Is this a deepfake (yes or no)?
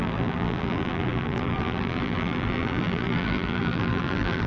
yes